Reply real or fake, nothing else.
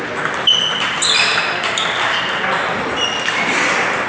real